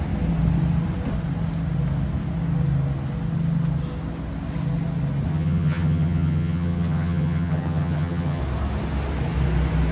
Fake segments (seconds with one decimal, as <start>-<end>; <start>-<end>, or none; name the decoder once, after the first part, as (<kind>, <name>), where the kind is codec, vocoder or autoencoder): 5.3-8.4 (vocoder, HiFi-GAN)